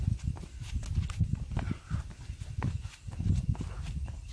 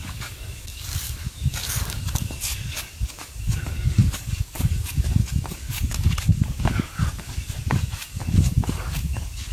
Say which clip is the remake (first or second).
second